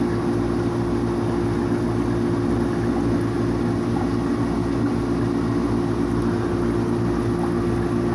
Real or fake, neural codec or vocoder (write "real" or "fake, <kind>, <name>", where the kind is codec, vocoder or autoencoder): real